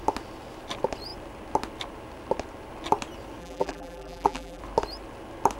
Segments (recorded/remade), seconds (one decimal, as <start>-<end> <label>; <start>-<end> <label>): 0.0-3.4 recorded; 3.4-4.6 remade; 4.6-5.6 recorded